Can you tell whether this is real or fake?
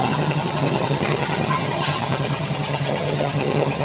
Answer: fake